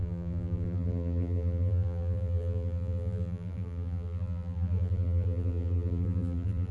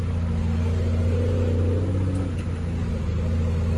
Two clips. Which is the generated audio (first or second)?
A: first